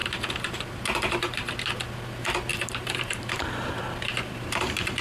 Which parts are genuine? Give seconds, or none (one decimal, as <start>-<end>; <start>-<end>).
1.5-2.5